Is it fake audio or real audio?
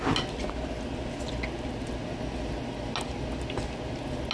real